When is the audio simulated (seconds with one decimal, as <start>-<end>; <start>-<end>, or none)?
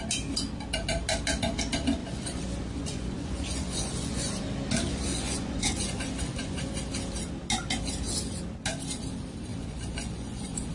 2.0-4.3; 5.1-6.8; 9.5-10.7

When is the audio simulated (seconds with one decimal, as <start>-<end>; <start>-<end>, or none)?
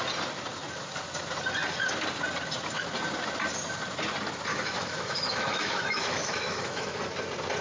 4.5-7.0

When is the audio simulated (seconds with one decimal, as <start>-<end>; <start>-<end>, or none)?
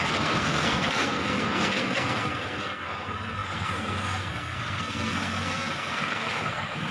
0.0-6.9